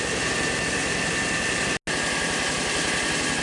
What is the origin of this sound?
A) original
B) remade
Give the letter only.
A